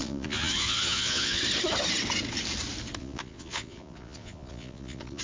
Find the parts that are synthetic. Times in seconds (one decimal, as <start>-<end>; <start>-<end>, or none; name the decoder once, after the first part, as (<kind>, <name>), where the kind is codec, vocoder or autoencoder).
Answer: 0.0-1.4 (vocoder, Vocos); 3.0-5.2